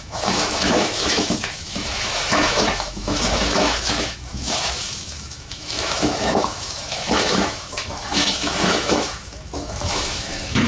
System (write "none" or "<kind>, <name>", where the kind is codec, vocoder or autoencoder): autoencoder, DAC-VAE